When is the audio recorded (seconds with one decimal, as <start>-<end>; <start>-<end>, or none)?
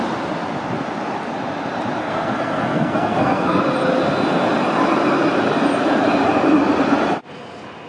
0.0-2.0; 3.6-7.9